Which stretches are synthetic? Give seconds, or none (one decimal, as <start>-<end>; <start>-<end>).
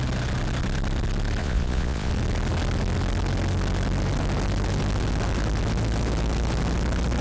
1.4-2.1